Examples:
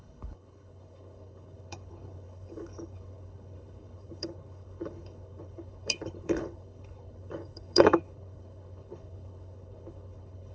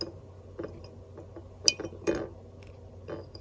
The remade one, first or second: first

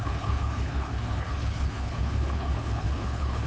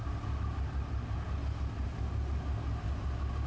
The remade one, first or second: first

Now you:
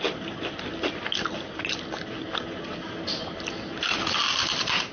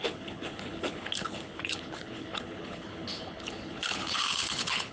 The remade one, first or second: second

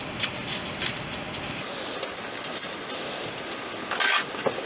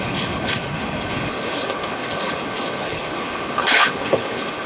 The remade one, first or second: second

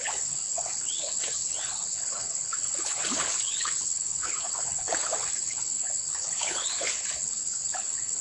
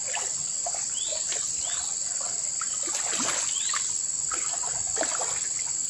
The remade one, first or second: first